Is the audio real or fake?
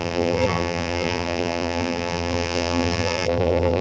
fake